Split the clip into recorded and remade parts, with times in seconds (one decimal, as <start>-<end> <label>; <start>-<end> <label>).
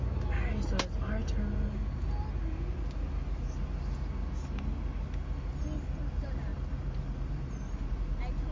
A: 0.0-8.5 recorded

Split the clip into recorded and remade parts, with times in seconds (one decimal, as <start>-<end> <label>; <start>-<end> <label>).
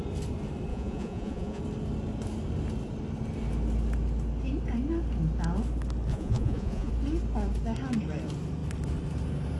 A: 0.0-0.7 recorded; 0.7-1.6 remade; 1.6-6.1 recorded; 6.1-6.9 remade; 6.9-9.6 recorded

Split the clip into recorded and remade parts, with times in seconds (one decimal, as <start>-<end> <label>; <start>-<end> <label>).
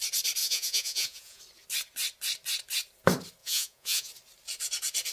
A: 0.0-0.4 recorded; 0.4-1.4 remade; 1.4-3.4 recorded; 3.4-4.1 remade; 4.1-5.1 recorded